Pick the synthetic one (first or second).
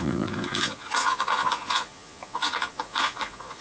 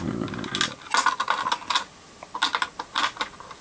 first